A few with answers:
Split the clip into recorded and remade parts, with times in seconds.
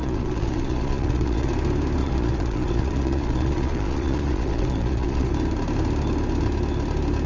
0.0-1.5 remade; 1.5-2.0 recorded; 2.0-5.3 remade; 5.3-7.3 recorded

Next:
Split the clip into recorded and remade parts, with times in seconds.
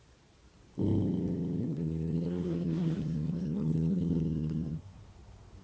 0.0-1.6 recorded; 1.6-5.0 remade; 5.0-5.6 recorded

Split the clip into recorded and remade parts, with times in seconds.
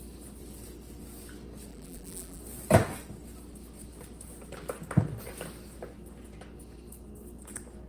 0.0-1.7 recorded; 1.7-2.4 remade; 2.4-7.9 recorded